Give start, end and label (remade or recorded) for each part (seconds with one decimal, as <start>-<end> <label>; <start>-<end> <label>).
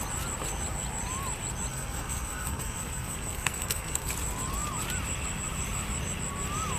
0.0-1.7 recorded; 1.7-4.1 remade; 4.1-6.8 recorded